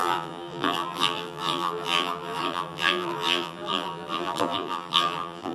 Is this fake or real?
fake